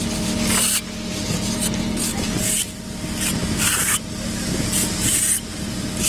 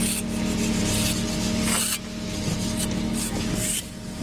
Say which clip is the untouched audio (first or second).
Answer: second